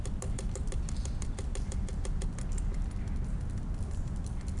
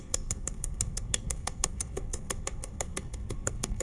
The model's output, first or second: second